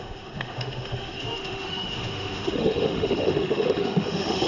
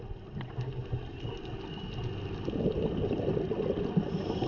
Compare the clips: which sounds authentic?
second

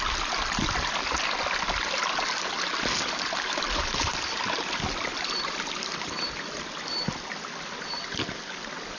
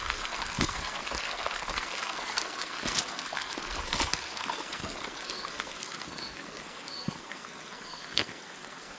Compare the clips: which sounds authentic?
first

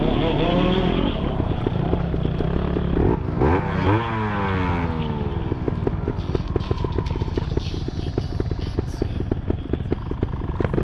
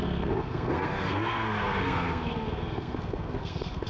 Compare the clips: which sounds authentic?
first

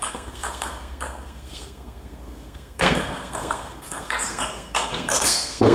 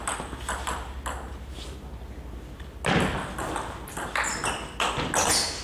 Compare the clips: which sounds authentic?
second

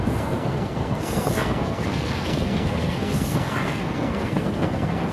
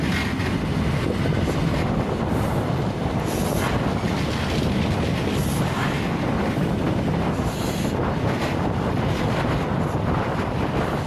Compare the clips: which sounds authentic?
second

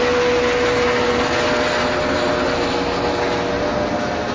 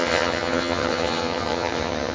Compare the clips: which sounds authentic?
first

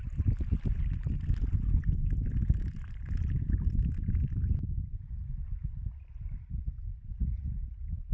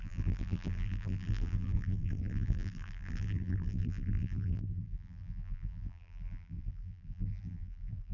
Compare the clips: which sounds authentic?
first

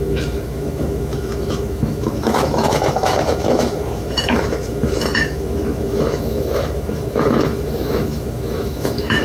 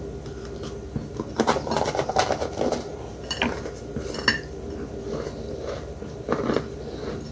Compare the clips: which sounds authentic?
second